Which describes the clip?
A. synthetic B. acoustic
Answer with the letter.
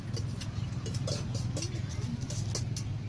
B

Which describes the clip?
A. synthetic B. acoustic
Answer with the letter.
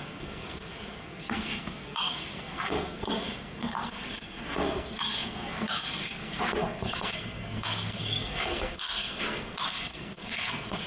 A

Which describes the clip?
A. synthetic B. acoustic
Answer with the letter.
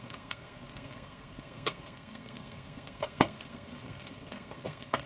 A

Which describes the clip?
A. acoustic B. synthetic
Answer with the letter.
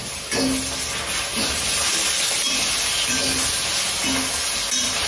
A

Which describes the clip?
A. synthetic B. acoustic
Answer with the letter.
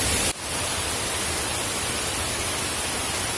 B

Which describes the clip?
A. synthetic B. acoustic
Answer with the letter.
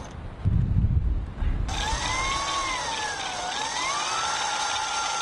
B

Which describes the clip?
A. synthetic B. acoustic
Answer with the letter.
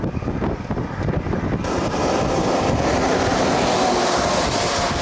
B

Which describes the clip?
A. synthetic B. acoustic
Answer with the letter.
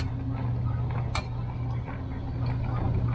B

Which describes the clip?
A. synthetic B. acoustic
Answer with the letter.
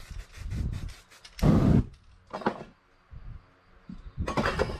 B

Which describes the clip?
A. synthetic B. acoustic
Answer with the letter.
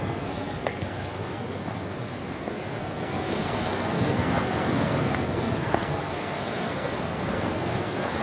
A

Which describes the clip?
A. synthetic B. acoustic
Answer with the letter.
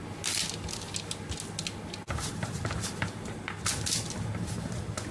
B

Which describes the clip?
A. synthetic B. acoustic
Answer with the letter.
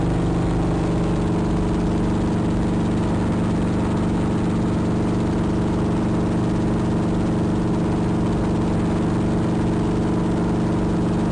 B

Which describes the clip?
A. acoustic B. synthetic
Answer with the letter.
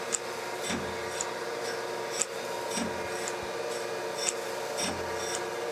A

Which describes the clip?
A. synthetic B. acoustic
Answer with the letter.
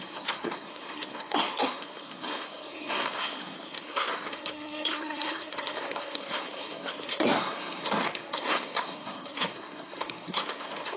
A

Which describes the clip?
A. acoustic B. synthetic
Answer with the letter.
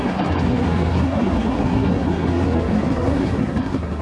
B